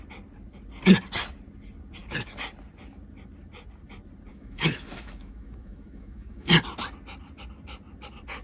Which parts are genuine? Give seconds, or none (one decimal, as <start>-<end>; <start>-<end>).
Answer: 0.0-4.3; 6.5-8.4